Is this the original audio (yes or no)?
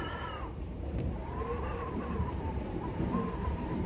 no